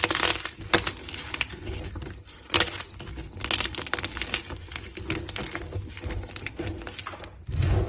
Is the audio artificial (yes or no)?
no